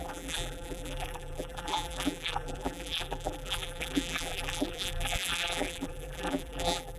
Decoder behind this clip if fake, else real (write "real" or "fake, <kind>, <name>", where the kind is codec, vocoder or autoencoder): fake, vocoder, BigVGAN v2